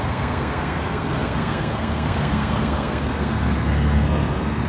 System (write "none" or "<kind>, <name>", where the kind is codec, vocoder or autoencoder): codec, SNAC